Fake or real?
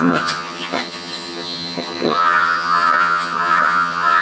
fake